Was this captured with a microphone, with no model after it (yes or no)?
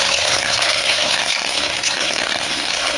no